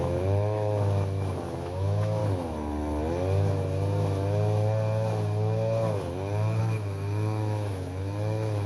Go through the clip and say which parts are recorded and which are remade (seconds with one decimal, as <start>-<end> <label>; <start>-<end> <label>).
0.0-2.2 remade; 2.2-6.6 recorded; 6.6-8.7 remade